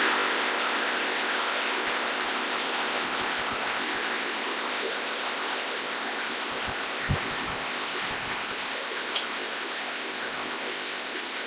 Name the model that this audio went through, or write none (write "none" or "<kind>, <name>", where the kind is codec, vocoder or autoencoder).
codec, ZipCodec